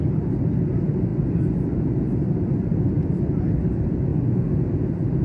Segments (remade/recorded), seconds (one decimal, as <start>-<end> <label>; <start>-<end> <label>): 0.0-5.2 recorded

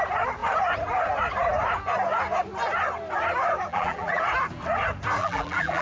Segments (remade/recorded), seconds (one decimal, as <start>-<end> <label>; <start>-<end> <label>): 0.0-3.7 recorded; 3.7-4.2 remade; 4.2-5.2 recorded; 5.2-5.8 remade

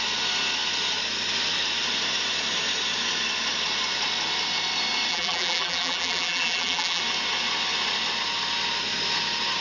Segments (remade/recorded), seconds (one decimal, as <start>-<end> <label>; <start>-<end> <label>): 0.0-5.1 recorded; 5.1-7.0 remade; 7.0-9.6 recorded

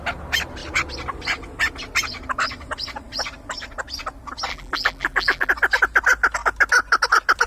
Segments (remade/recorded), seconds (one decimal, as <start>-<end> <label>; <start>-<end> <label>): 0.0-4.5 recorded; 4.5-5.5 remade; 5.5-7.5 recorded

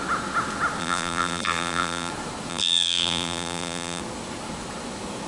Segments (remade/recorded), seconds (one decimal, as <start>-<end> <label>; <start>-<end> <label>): 0.0-0.8 recorded; 0.8-2.1 remade; 2.1-2.5 recorded; 2.5-4.0 remade; 4.0-5.3 recorded

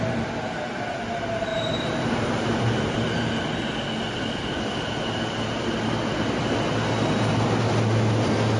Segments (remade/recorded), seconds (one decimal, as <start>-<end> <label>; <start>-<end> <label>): 0.0-1.5 recorded; 1.5-2.3 remade; 2.3-8.6 recorded

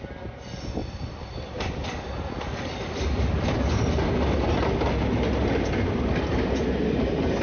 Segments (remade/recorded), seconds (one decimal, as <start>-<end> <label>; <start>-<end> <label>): 0.0-0.8 recorded; 0.8-4.5 remade; 4.5-7.4 recorded